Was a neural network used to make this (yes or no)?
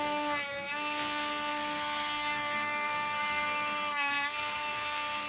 yes